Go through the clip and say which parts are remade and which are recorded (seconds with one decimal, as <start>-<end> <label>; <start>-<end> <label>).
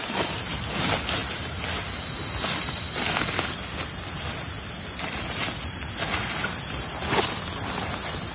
0.0-8.3 recorded